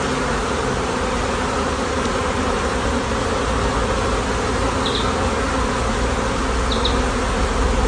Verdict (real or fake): real